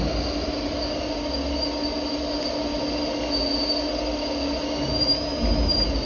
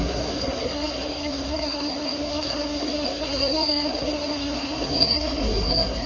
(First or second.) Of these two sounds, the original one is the first